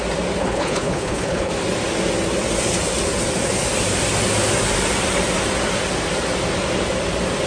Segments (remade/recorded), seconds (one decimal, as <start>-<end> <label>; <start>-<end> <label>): 0.0-0.4 recorded; 0.4-1.5 remade; 1.5-7.5 recorded